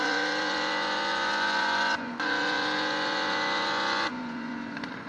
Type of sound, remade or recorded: remade